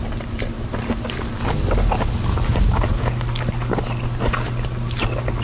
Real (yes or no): yes